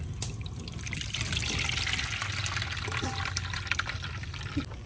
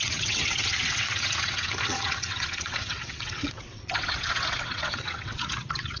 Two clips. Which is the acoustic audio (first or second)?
first